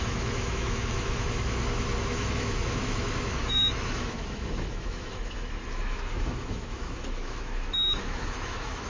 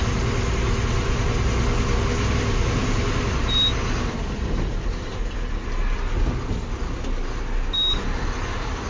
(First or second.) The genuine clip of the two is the second